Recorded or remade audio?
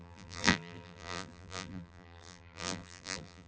remade